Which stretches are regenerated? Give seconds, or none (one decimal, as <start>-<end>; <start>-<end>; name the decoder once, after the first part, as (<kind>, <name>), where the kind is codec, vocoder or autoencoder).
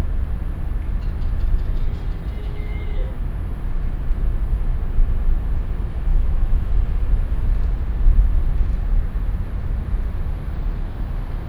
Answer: 2.4-3.1 (autoencoder, DAC-VAE); 6.1-6.7